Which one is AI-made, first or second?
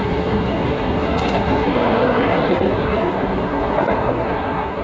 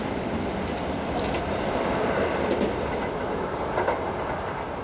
first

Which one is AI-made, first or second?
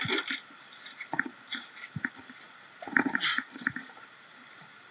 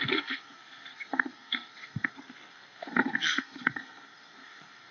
second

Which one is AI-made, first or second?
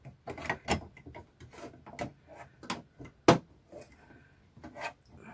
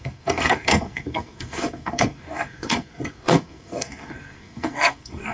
second